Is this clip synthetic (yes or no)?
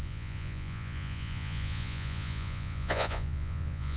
yes